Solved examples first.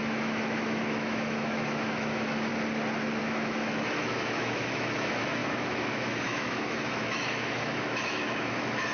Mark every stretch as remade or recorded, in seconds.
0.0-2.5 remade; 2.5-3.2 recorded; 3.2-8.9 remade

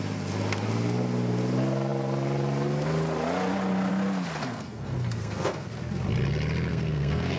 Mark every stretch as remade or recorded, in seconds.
0.0-4.4 recorded; 4.4-5.7 remade; 5.7-6.7 recorded; 6.7-7.4 remade

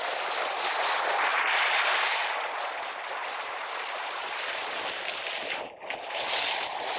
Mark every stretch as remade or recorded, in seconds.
0.0-3.2 recorded; 3.2-5.9 remade; 5.9-7.0 recorded

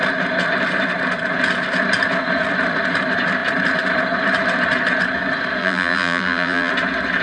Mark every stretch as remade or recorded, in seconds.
0.0-5.6 recorded; 5.6-6.7 remade; 6.7-7.2 recorded

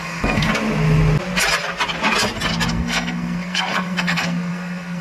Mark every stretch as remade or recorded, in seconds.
0.0-0.5 remade; 0.5-2.7 recorded; 2.7-5.0 remade